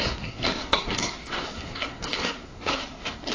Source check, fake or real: fake